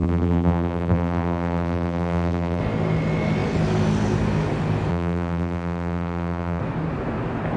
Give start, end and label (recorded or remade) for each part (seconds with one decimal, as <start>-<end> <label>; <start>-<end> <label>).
0.0-2.6 remade; 2.6-4.9 recorded; 4.9-6.6 remade; 6.6-7.6 recorded